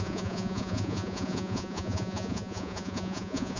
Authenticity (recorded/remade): remade